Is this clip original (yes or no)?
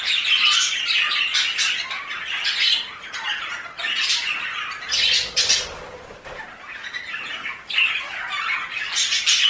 yes